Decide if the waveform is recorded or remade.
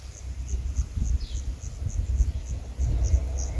recorded